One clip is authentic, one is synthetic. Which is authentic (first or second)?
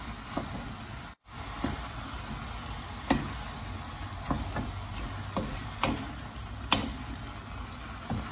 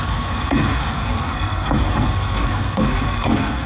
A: first